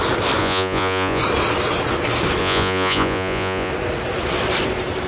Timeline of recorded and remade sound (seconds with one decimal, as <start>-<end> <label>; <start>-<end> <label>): 0.0-0.4 recorded; 0.4-1.2 remade; 1.2-2.4 recorded; 2.4-3.7 remade; 3.7-5.1 recorded